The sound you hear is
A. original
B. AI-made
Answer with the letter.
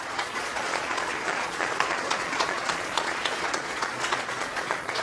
B